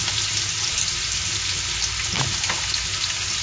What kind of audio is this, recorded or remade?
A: recorded